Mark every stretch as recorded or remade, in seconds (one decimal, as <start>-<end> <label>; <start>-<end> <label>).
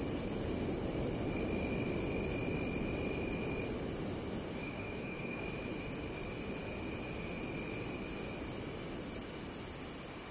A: 0.0-4.6 recorded; 4.6-5.4 remade; 5.4-10.3 recorded